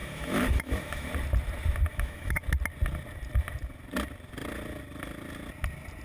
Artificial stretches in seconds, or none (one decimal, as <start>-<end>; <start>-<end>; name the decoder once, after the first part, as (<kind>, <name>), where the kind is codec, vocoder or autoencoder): 0.0-1.1 (autoencoder, DAC-VAE); 1.9-2.4